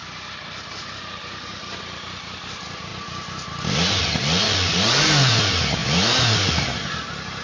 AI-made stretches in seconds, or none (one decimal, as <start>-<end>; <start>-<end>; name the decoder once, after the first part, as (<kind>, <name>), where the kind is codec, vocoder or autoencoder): 0.8-7.4 (vocoder, BigVGAN v2)